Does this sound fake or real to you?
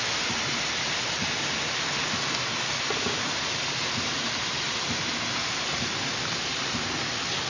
real